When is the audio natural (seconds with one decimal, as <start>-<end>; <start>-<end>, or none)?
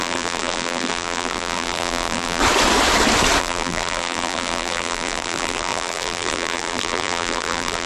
2.4-3.4